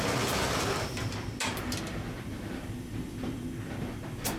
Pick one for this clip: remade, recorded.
recorded